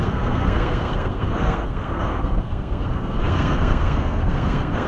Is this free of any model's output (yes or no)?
no